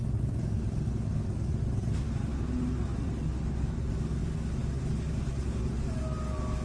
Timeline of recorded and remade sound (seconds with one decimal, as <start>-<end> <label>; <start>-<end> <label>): 0.0-6.6 recorded